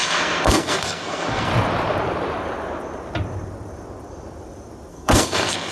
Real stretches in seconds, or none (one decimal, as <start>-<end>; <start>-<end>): 1.5-4.9